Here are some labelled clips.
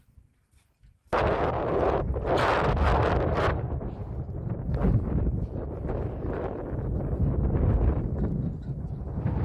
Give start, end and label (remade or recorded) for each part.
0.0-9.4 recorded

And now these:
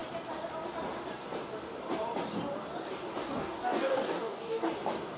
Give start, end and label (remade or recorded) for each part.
0.0-3.2 recorded; 3.2-4.7 remade; 4.7-5.2 recorded

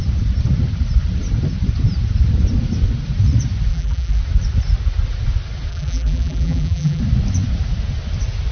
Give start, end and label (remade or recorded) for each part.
0.0-3.7 recorded; 3.7-4.2 remade; 4.2-5.7 recorded; 5.7-7.0 remade; 7.0-8.5 recorded

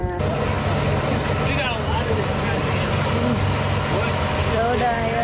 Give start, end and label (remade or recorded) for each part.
0.0-5.2 recorded

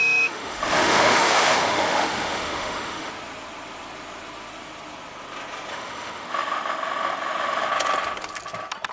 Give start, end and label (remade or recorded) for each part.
0.0-3.1 remade; 3.1-5.7 recorded; 5.7-7.7 remade; 7.7-8.9 recorded

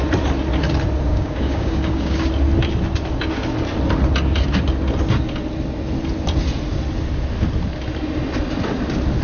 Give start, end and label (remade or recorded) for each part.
0.0-1.1 recorded; 1.1-2.3 remade; 2.3-9.2 recorded

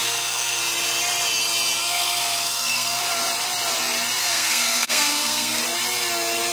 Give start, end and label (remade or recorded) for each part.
0.0-0.6 remade; 0.6-1.8 recorded; 1.8-3.0 remade; 3.0-4.2 recorded; 4.2-5.6 remade; 5.6-6.5 recorded